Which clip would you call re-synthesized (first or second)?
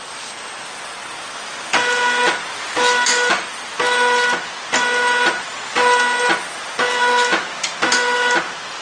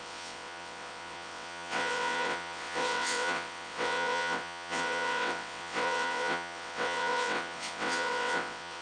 second